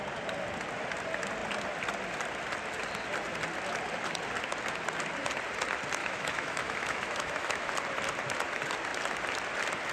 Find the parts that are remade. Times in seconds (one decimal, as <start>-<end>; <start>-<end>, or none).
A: 6.0-7.7